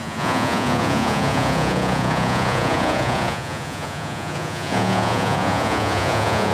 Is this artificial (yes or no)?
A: yes